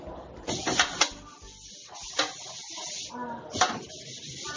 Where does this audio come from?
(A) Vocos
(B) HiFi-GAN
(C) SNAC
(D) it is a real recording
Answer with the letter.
D